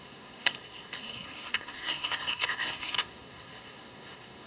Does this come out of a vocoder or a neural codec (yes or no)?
yes